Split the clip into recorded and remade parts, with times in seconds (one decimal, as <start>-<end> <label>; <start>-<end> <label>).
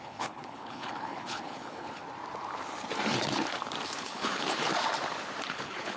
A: 0.0-2.0 remade; 2.0-4.0 recorded; 4.0-4.7 remade; 4.7-5.4 recorded; 5.4-6.0 remade